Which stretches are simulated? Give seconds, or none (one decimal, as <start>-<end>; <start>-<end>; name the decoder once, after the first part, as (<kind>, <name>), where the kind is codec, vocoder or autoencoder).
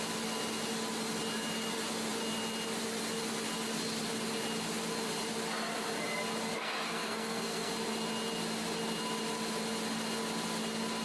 6.5-7.7 (codec, SNAC)